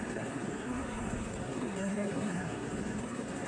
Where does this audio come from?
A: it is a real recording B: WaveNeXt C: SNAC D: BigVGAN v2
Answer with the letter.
C